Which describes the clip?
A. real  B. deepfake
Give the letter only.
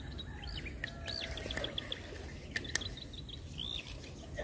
A